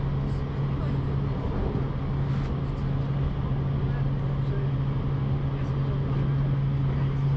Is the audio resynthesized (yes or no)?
no